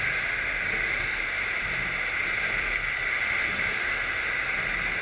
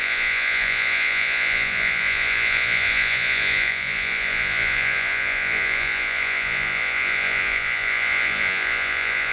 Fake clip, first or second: second